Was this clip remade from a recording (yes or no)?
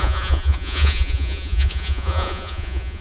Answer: yes